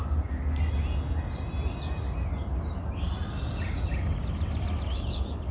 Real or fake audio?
real